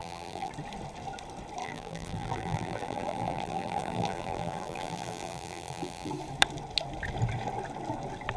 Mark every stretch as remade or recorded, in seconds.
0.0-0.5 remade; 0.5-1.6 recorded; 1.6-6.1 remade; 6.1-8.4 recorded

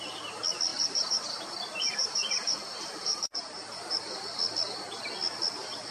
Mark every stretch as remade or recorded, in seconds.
0.0-0.7 recorded; 0.7-4.2 remade; 4.2-5.9 recorded

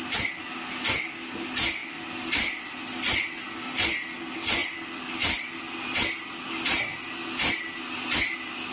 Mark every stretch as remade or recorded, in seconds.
0.0-8.7 recorded

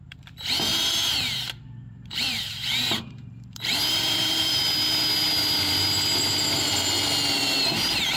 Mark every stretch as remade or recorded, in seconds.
0.0-0.7 recorded; 0.7-4.6 remade; 4.6-8.2 recorded